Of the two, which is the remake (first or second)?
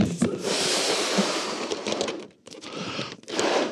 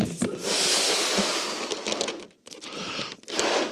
first